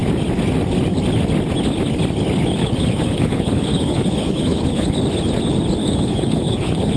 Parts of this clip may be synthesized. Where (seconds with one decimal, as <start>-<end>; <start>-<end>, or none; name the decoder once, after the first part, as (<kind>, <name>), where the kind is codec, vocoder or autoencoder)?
2.6-5.0 (codec, HILCodec); 5.8-7.0